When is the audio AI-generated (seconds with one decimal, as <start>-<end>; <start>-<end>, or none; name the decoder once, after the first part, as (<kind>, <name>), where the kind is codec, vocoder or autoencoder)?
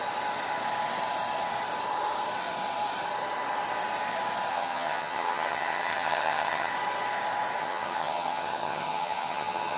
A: 4.5-6.7 (vocoder, HiFi-GAN); 7.6-9.8